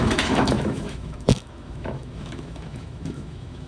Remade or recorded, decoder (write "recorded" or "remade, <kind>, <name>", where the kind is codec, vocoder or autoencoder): remade, autoencoder, DAC-VAE